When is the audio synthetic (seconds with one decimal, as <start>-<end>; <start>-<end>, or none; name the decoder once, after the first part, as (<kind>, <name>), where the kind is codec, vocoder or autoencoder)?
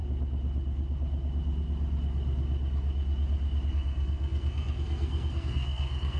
3.7-6.2 (codec, SNAC)